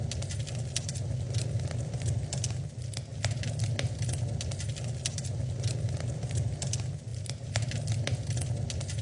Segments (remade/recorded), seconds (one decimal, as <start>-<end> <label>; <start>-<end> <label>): 0.0-7.1 recorded; 7.1-7.7 remade; 7.7-9.0 recorded